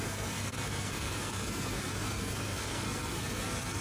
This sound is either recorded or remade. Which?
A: remade